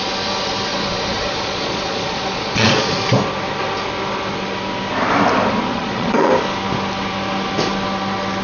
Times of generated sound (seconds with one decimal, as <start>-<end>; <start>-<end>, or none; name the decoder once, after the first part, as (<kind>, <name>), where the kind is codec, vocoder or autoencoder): 0.7-3.0 (vocoder, Vocos); 5.7-6.3